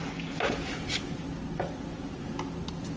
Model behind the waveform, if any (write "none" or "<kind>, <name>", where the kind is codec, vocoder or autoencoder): none